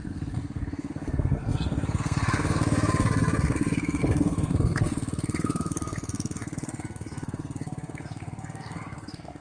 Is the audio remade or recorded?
remade